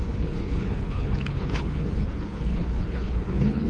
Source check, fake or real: fake